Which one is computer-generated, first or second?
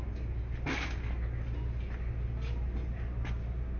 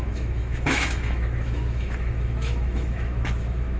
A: second